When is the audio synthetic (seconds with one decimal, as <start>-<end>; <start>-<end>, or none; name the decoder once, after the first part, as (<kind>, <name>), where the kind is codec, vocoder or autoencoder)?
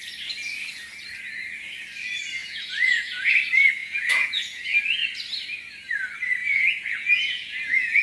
2.4-3.3 (vocoder, Vocos); 3.8-4.6; 6.4-8.0